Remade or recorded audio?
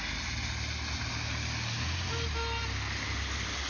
recorded